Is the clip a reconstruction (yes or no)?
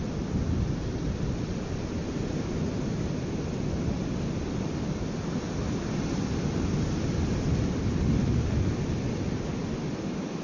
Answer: no